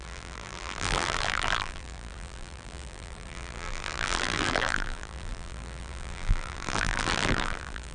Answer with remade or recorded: remade